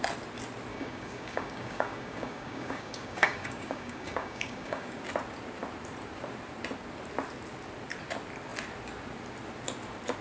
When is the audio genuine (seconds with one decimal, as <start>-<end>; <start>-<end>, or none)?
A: 0.0-0.7; 5.0-10.2